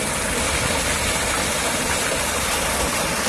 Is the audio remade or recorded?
recorded